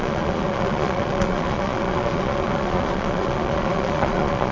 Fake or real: fake